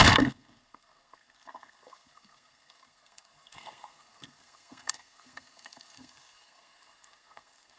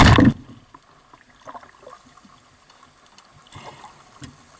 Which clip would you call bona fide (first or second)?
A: second